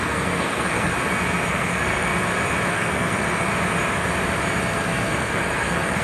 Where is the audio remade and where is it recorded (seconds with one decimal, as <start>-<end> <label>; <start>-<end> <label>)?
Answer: 0.0-0.9 remade; 0.9-1.5 recorded; 1.5-2.1 remade; 2.1-2.7 recorded; 2.7-3.5 remade; 3.5-4.6 recorded; 4.6-6.0 remade